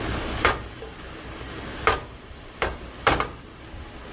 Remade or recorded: recorded